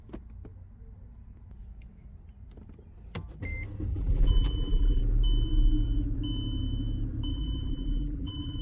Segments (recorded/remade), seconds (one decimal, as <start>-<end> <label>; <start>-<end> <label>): 0.0-3.9 recorded; 3.9-5.0 remade; 5.0-7.3 recorded; 7.3-8.6 remade